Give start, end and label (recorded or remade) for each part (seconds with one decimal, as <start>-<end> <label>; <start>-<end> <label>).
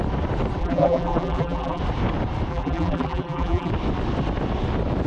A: 0.0-0.6 recorded; 0.6-1.8 remade; 1.8-2.5 recorded; 2.5-3.7 remade; 3.7-5.1 recorded